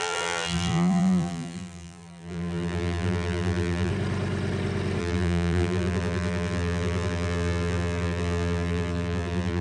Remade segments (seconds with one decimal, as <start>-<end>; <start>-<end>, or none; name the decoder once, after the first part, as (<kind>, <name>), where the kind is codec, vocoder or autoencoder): 0.0-3.9 (vocoder, BigVGAN v2); 5.0-9.6